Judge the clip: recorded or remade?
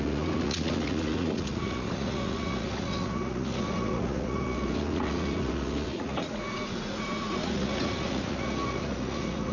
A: remade